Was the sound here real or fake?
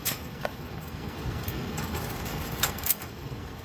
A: fake